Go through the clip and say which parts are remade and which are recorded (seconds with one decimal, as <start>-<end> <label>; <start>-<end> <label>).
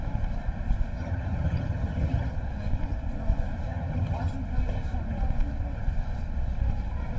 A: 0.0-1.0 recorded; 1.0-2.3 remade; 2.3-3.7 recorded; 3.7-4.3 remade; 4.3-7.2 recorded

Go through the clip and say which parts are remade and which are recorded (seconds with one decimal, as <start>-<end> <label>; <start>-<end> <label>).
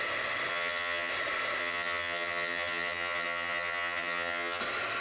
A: 0.0-0.5 recorded; 0.5-1.1 remade; 1.1-1.6 recorded; 1.6-4.6 remade; 4.6-5.0 recorded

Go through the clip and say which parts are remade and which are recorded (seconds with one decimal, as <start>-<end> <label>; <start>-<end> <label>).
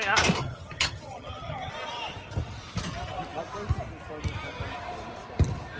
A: 0.0-0.4 recorded; 0.4-1.7 remade; 1.7-5.8 recorded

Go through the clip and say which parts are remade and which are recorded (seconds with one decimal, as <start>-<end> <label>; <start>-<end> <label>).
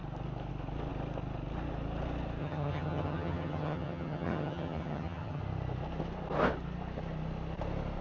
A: 0.0-2.4 recorded; 2.4-5.4 remade; 5.4-8.0 recorded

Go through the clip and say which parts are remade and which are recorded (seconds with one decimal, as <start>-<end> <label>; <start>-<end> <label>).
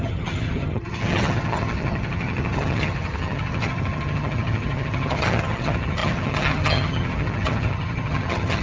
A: 0.0-8.6 remade